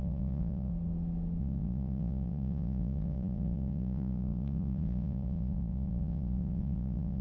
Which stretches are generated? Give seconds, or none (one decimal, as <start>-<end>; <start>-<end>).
0.0-0.7; 1.4-7.2